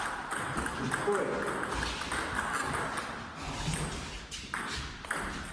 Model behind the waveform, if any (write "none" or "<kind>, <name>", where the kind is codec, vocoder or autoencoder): none